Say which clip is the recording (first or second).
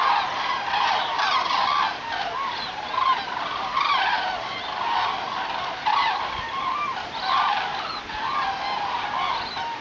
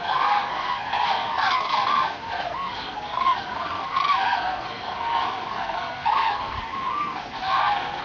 first